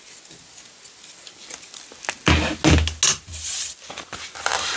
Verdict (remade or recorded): recorded